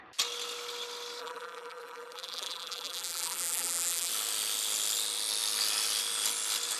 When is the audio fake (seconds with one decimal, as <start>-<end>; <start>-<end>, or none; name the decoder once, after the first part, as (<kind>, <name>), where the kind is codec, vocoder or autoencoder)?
1.2-4.1 (vocoder, BigVGAN v2)